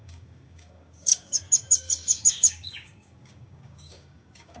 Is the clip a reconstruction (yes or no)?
yes